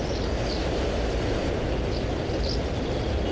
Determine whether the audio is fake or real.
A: real